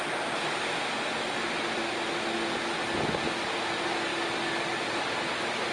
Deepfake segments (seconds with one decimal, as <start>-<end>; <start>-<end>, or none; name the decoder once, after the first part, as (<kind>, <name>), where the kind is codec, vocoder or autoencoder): none